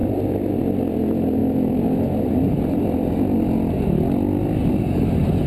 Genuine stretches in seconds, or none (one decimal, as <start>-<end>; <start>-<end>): 0.6-5.5